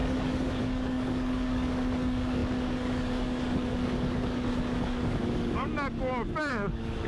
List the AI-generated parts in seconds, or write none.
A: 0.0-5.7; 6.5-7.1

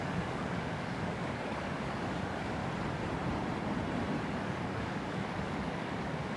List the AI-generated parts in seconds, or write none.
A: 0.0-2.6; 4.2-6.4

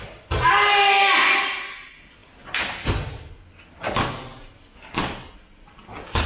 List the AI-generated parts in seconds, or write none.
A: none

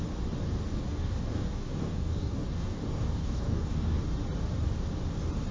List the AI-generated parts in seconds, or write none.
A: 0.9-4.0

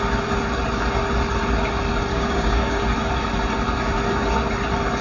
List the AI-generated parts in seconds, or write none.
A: 2.1-2.8

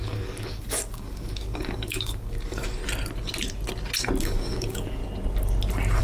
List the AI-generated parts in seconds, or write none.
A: 0.0-2.8; 4.2-5.0

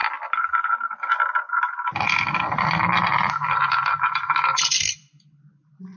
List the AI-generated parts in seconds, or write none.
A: none

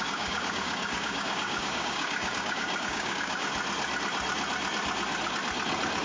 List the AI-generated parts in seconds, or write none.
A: 0.0-3.5